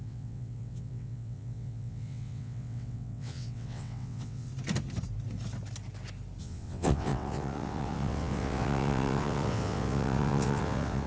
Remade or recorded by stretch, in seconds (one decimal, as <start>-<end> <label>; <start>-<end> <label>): 0.0-4.5 remade; 4.5-6.4 recorded; 6.4-11.1 remade

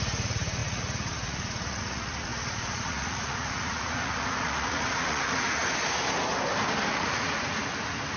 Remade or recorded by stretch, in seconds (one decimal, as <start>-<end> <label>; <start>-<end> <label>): 0.0-5.6 remade; 5.6-6.9 recorded; 6.9-7.6 remade; 7.6-8.2 recorded

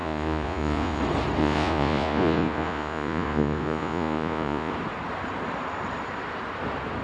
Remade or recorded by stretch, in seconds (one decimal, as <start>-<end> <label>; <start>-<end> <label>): 0.0-1.0 remade; 1.0-1.4 recorded; 1.4-4.7 remade; 4.7-7.0 recorded

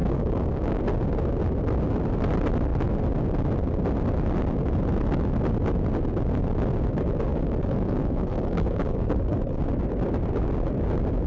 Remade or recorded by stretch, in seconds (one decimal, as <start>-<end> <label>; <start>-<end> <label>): 0.0-0.8 remade; 0.8-7.3 recorded; 7.3-9.6 remade; 9.6-11.3 recorded

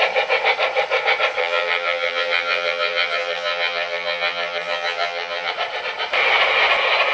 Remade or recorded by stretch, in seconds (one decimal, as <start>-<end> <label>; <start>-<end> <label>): 0.0-1.4 recorded; 1.4-5.5 remade; 5.5-7.1 recorded